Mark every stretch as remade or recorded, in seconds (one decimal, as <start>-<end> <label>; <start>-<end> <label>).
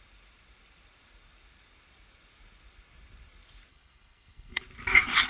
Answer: 0.0-3.7 recorded; 3.7-4.6 remade; 4.6-5.3 recorded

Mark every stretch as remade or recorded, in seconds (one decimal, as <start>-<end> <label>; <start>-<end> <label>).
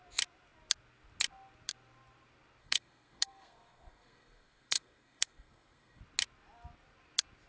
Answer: 0.0-2.6 recorded; 2.6-6.0 remade; 6.0-7.5 recorded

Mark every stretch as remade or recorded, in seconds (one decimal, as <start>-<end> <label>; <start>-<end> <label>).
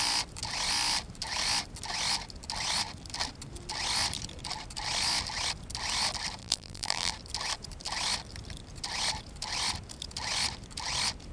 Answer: 0.0-6.4 recorded; 6.4-7.1 remade; 7.1-11.3 recorded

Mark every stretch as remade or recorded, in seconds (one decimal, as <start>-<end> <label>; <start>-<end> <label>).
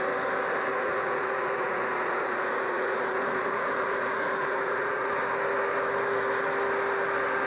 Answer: 0.0-0.7 recorded; 0.7-5.2 remade; 5.2-7.5 recorded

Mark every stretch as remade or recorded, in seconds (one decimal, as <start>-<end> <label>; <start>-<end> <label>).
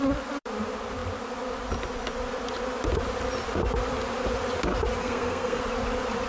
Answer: 0.0-5.0 recorded; 5.0-5.6 remade; 5.6-6.3 recorded